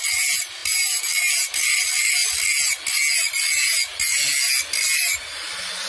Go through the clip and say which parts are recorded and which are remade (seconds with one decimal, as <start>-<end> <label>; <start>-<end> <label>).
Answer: 0.0-5.9 recorded